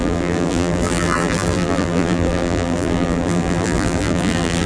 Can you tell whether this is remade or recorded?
remade